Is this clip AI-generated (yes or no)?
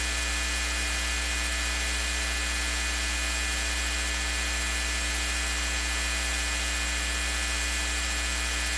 yes